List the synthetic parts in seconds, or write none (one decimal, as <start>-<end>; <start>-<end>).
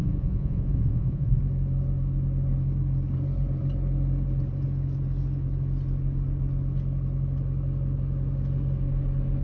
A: 0.0-1.4